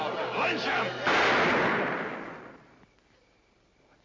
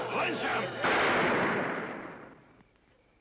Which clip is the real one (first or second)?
first